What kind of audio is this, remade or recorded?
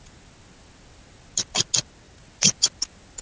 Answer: recorded